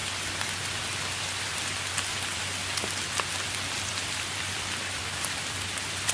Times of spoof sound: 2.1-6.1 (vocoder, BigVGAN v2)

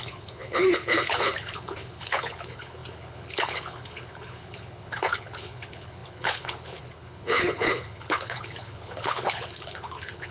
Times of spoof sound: 0.0-10.3 (codec, HILCodec)

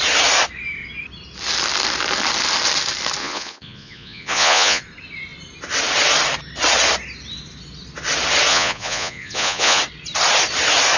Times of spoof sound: 3.2-4.8 (vocoder, Vocos); 8.5-9.8

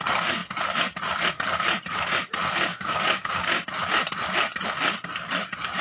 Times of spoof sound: 2.7-3.6 (codec, DAC)

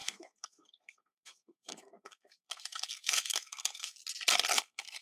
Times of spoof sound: 0.0-4.0 (codec, SNAC); 4.6-5.0

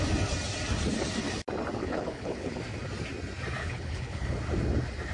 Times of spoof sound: 1.8-2.6 (codec, HILCodec); 3.6-4.4

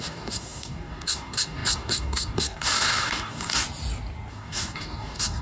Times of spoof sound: 0.0-3.6 (codec, DAC); 4.3-5.4

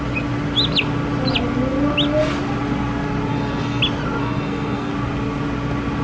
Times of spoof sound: 3.3-3.8 (codec, SNAC); 4.2-4.9